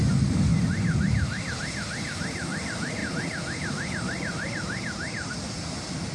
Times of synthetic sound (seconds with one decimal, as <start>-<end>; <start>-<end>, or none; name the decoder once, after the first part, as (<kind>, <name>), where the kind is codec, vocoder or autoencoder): none